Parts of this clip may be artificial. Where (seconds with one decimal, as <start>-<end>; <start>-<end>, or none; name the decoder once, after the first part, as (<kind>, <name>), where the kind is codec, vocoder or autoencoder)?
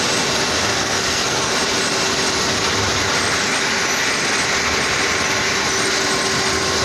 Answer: 0.7-1.5 (codec, SNAC)